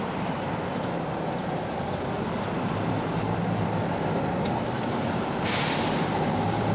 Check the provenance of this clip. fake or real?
fake